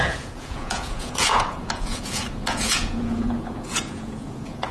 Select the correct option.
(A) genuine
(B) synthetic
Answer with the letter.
B